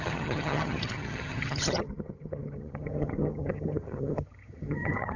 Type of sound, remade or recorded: remade